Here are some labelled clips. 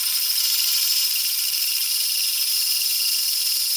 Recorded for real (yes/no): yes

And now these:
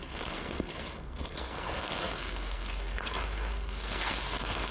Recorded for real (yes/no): no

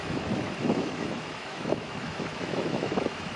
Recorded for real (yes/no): no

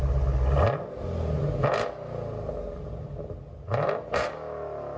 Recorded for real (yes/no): yes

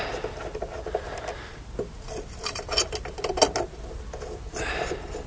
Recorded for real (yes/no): yes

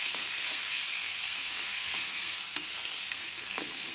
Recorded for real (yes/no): no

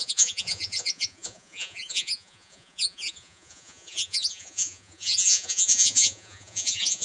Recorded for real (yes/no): no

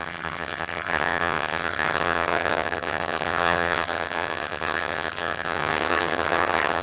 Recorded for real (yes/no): no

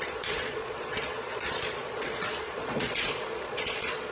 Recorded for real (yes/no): no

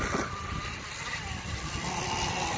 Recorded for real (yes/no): yes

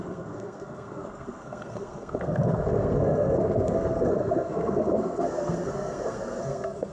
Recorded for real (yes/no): no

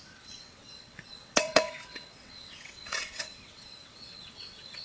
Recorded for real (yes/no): no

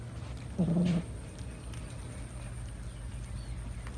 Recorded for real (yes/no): yes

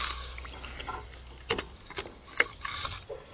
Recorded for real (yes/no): yes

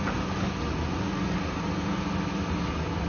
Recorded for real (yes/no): yes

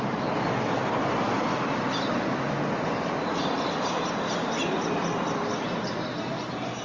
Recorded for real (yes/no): yes